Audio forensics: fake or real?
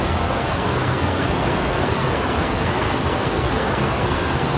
fake